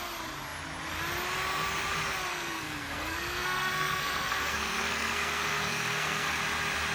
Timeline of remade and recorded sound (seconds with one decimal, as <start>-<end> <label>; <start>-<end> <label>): 0.0-2.3 recorded; 2.3-6.4 remade; 6.4-6.9 recorded